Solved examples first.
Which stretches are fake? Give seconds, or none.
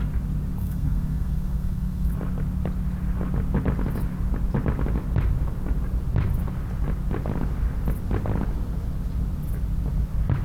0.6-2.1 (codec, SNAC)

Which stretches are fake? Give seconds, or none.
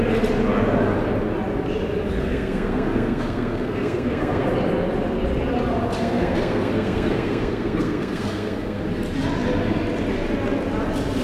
2.2-4.5 (codec, SNAC); 6.0-8.8